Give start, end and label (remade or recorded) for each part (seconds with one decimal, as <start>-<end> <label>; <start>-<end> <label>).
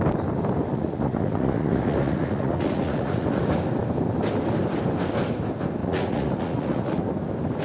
0.0-0.7 recorded; 0.7-3.4 remade; 3.4-5.8 recorded; 5.8-7.0 remade; 7.0-7.6 recorded